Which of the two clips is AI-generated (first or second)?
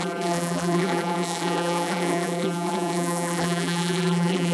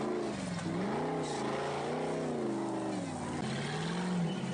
first